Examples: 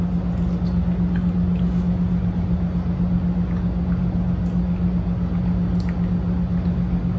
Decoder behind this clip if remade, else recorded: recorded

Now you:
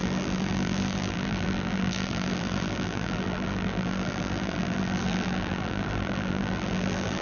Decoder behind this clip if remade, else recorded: remade, vocoder, BigVGAN v2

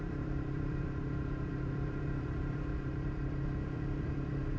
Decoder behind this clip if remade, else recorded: remade, vocoder, BigVGAN v2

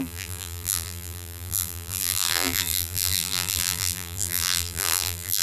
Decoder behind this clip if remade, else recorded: remade, vocoder, BigVGAN v2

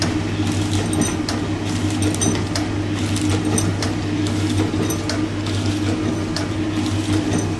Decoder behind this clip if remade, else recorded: recorded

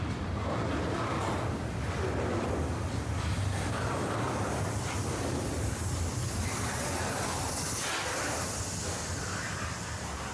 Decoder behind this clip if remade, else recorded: remade, vocoder, BigVGAN v2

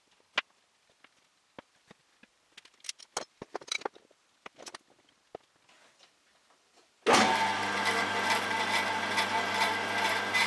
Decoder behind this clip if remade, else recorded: recorded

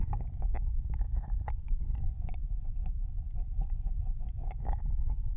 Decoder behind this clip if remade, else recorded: remade, vocoder, BigVGAN v2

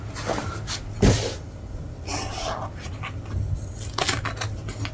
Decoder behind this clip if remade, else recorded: recorded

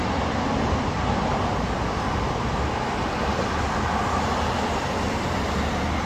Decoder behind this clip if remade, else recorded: recorded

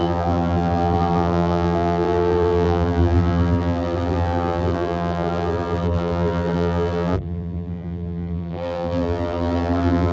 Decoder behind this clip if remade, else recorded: remade, vocoder, BigVGAN v2